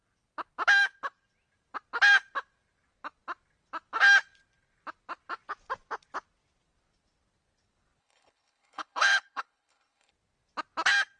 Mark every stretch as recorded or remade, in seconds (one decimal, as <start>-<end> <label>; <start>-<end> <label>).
0.0-8.0 recorded; 8.0-10.1 remade; 10.1-11.2 recorded